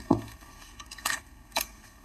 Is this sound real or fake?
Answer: fake